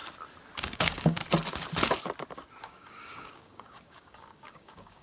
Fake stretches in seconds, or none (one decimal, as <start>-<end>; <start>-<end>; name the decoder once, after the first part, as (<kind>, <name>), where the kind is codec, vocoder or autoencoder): 0.6-1.2 (codec, DAC); 2.6-5.0